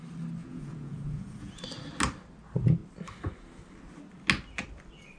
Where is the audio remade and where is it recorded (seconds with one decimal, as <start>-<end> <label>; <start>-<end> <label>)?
0.0-0.4 recorded; 0.4-1.6 remade; 1.6-5.2 recorded